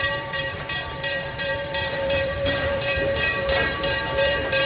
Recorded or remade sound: remade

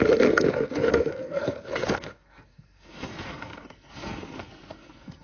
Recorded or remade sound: remade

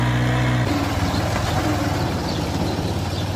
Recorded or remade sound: recorded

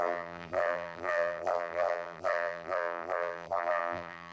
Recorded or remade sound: remade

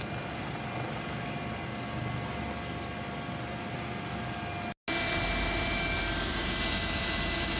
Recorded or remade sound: recorded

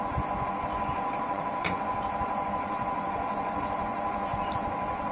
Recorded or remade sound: remade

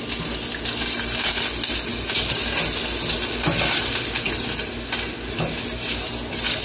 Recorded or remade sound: recorded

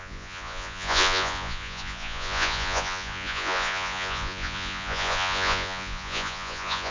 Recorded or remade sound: remade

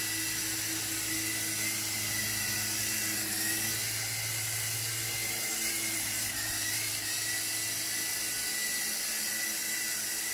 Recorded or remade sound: recorded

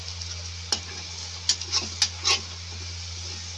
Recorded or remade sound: recorded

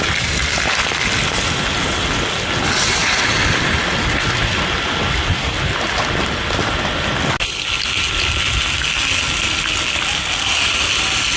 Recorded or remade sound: recorded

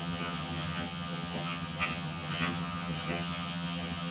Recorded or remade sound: remade